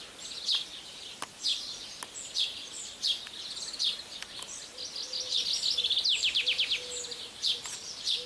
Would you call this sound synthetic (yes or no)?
no